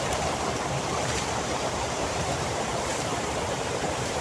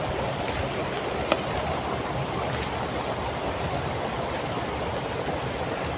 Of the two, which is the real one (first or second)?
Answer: second